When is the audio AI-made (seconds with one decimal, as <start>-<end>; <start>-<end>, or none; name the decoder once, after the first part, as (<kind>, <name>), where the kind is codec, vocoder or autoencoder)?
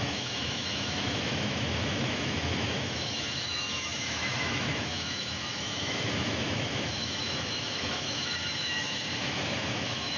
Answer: 0.0-10.2 (autoencoder, DAC-VAE)